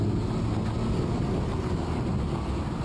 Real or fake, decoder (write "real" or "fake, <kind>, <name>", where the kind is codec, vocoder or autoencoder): real